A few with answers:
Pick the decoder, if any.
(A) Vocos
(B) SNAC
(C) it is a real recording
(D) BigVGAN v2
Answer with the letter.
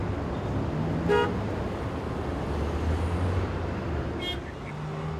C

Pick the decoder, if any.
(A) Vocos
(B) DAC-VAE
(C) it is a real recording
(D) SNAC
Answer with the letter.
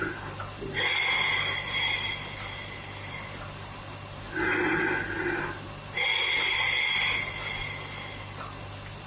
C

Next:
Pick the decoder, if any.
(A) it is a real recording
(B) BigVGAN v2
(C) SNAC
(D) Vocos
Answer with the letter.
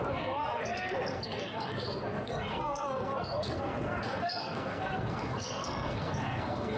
C